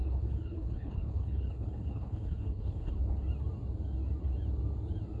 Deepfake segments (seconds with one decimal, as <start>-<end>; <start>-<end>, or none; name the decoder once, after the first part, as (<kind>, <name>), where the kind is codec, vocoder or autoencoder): 0.0-2.9 (codec, HILCodec)